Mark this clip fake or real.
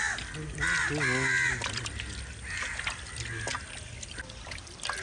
real